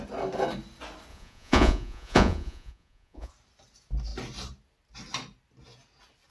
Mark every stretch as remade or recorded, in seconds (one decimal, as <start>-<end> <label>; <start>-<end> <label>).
0.0-1.1 recorded; 1.1-3.3 remade; 3.3-6.3 recorded